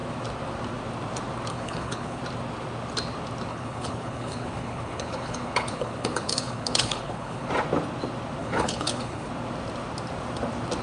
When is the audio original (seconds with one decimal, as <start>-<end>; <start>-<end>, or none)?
0.0-1.5; 2.2-3.5; 7.5-8.4; 9.3-10.8